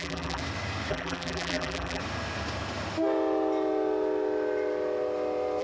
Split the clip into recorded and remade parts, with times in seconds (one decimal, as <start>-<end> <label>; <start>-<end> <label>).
0.0-0.4 remade; 0.4-0.9 recorded; 0.9-2.0 remade; 2.0-5.6 recorded